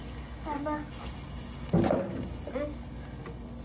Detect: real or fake real